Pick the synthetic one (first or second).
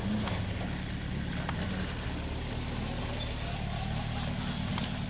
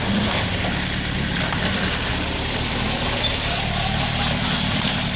second